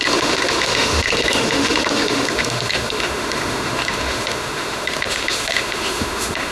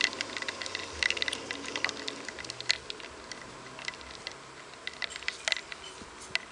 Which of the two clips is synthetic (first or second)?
first